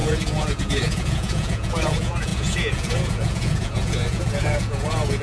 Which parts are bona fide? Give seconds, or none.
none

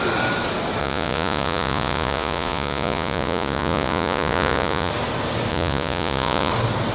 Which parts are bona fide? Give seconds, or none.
0.0-0.8; 4.9-5.5; 6.5-6.9

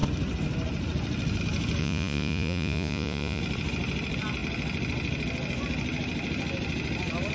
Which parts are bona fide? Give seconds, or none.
0.0-1.8; 3.4-7.3

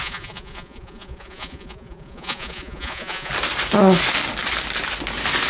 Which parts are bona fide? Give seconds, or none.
3.3-5.5

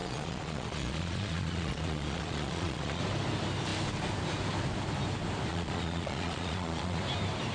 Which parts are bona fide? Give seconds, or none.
3.0-5.5; 7.0-7.5

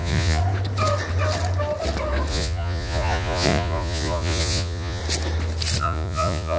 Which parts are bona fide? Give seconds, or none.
0.4-2.3; 5.0-5.8